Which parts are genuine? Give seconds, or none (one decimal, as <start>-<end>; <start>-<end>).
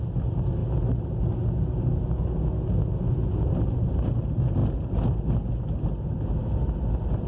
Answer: 0.0-7.3